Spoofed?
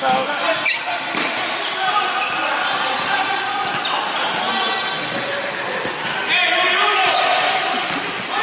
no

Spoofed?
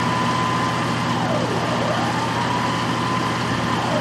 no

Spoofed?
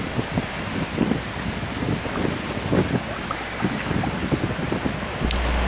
no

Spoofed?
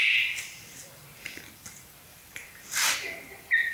yes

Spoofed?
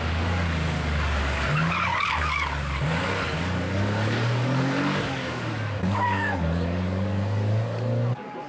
yes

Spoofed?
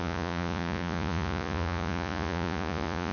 yes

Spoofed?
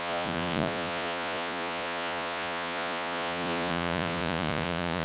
yes